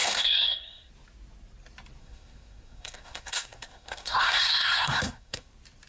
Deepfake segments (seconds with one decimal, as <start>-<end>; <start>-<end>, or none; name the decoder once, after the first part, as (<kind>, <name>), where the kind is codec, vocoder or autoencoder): 0.0-0.9 (codec, SNAC); 2.0-5.5